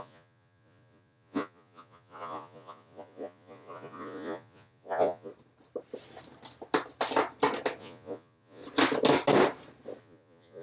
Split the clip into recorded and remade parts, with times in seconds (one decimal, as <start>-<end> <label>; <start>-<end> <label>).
0.0-5.3 remade; 5.3-7.8 recorded; 7.8-8.6 remade; 8.6-10.0 recorded; 10.0-10.6 remade